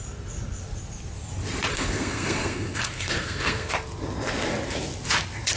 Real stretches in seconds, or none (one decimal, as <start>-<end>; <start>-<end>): 0.0-1.7; 3.7-5.6